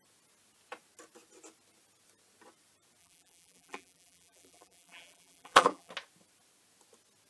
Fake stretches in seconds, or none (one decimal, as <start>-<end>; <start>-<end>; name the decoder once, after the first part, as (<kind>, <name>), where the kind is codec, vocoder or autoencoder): 3.0-5.9 (vocoder, BigVGAN v2)